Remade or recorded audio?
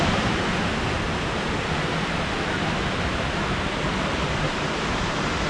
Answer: recorded